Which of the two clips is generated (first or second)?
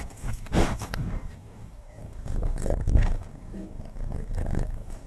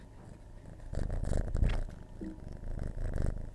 first